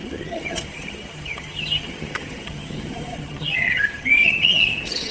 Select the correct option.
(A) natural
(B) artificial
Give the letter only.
B